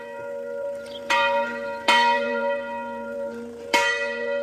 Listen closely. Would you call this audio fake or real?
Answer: fake